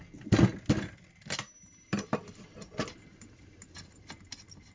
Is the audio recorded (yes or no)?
yes